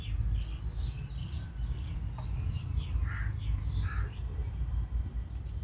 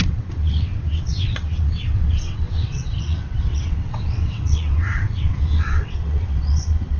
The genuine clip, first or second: first